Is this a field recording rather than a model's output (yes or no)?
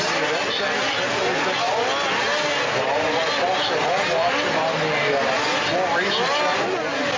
yes